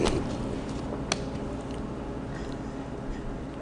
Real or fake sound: real